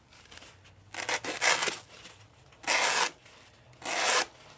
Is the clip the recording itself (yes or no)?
yes